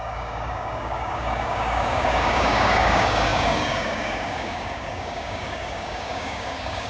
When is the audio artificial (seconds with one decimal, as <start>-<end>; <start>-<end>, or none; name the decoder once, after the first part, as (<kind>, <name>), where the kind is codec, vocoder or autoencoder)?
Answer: 0.0-6.9 (codec, DAC)